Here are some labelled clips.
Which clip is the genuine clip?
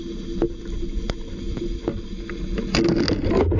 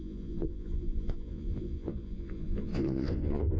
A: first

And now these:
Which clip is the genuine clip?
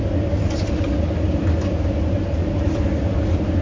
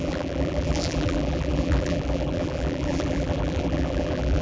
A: first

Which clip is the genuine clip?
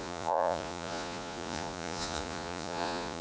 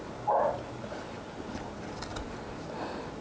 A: second